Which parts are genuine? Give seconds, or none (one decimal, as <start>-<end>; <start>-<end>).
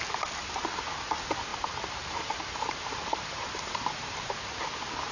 0.0-1.5; 4.6-5.1